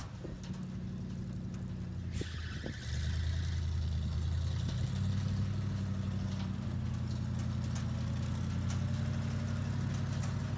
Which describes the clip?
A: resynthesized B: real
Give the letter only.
B